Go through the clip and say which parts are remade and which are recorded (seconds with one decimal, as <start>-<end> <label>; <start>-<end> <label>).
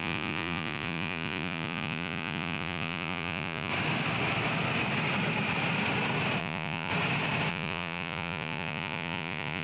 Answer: 0.0-3.7 remade; 3.7-6.4 recorded; 6.4-6.9 remade; 6.9-7.5 recorded; 7.5-9.6 remade